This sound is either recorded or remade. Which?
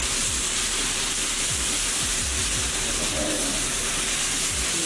remade